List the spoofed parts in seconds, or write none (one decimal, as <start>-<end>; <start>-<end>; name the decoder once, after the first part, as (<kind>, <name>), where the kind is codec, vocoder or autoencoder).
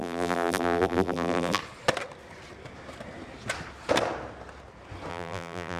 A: 0.0-1.6 (vocoder, BigVGAN v2); 5.1-5.8